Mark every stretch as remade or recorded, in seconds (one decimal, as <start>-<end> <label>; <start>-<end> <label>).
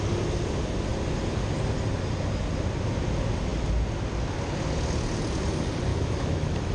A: 0.0-5.9 recorded; 5.9-6.7 remade